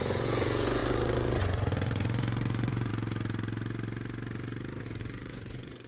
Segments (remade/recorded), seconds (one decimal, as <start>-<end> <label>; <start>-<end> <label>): 0.0-2.9 remade; 2.9-5.0 recorded; 5.0-5.9 remade